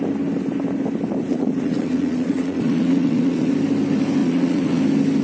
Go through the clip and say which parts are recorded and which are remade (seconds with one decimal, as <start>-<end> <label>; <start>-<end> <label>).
0.0-1.3 recorded; 1.3-3.5 remade; 3.5-4.2 recorded; 4.2-4.8 remade; 4.8-5.2 recorded